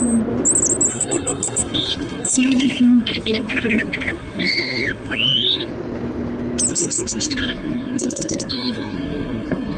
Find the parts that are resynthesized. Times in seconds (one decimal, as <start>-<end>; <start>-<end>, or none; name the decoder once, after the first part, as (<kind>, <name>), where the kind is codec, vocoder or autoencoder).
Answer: 0.9-5.7 (codec, SNAC); 6.7-9.8